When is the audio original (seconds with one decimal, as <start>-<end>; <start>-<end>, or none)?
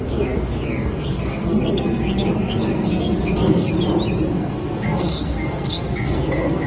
3.7-4.3